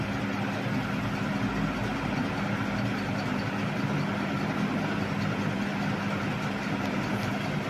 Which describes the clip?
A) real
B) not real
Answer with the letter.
A